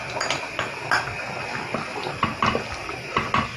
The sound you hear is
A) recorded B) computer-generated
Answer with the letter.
A